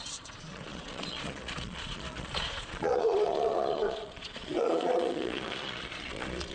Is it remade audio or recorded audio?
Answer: remade